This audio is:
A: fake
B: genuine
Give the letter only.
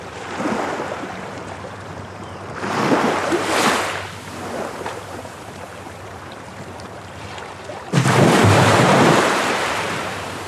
A